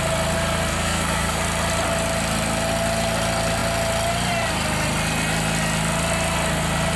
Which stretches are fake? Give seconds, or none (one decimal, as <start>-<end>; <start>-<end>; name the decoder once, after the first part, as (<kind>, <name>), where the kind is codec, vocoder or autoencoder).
0.7-1.4 (codec, SNAC)